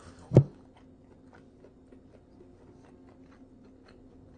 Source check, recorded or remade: recorded